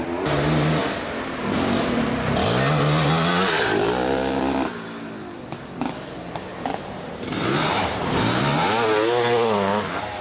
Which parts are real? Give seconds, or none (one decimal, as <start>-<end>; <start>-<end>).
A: 0.0-6.5; 8.4-10.2